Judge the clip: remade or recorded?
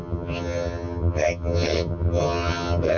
remade